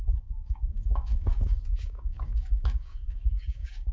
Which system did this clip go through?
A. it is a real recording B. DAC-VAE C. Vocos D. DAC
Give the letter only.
D